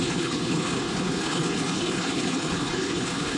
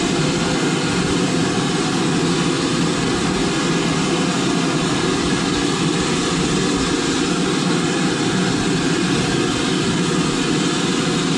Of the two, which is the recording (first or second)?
second